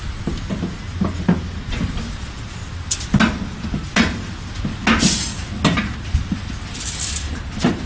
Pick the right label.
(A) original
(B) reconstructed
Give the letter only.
A